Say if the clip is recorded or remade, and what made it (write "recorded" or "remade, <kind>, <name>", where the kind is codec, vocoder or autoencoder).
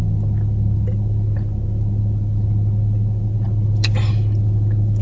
recorded